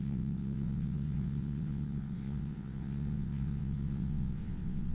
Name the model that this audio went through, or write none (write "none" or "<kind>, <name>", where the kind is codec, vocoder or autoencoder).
vocoder, WaveNeXt